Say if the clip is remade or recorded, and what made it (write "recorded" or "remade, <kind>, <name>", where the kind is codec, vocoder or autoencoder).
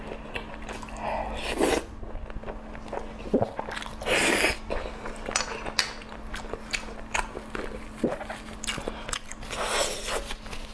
recorded